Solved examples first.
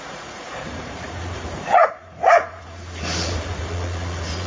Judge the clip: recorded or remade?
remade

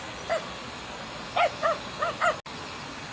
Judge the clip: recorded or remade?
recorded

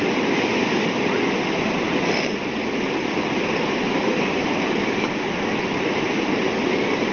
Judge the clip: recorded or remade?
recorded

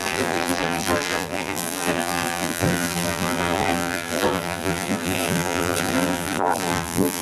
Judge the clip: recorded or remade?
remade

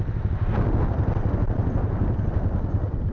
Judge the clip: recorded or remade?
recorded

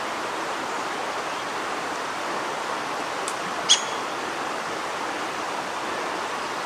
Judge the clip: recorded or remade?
remade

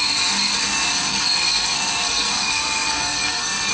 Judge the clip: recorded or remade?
remade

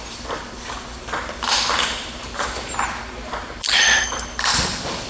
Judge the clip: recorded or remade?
remade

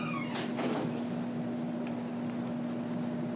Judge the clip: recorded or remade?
recorded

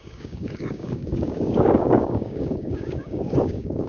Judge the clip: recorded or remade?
remade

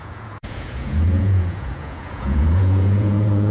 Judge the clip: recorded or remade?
remade